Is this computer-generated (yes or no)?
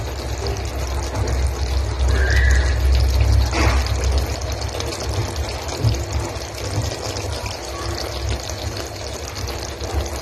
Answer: no